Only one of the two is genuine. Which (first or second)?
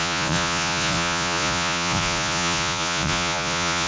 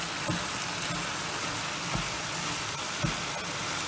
second